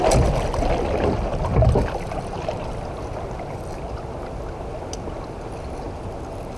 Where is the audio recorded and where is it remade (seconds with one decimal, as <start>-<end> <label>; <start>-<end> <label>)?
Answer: 0.0-6.6 recorded